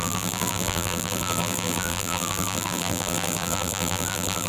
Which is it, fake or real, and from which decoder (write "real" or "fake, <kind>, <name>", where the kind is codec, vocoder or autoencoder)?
fake, vocoder, BigVGAN v2